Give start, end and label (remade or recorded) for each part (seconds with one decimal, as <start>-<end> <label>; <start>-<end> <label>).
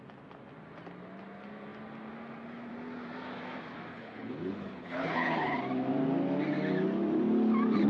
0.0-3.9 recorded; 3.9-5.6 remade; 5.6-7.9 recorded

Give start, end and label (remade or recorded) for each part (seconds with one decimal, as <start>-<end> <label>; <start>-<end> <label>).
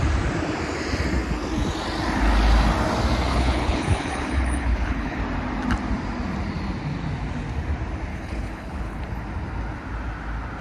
0.0-3.3 recorded; 3.3-5.2 remade; 5.2-8.1 recorded; 8.1-9.0 remade; 9.0-10.6 recorded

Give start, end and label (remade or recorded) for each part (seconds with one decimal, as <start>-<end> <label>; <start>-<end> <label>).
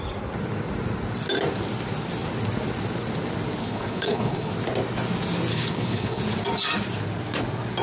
0.0-3.6 recorded; 3.6-4.5 remade; 4.5-5.5 recorded; 5.5-6.2 remade; 6.2-7.8 recorded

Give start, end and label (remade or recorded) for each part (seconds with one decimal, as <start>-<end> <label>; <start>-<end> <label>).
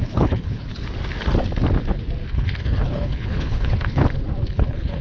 0.0-0.7 remade; 0.7-2.3 recorded; 2.3-4.0 remade; 4.0-4.5 recorded; 4.5-5.0 remade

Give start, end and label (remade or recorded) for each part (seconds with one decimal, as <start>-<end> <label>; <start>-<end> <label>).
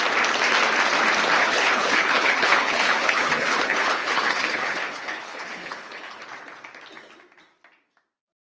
0.0-1.4 recorded; 1.4-6.2 remade; 6.2-8.6 recorded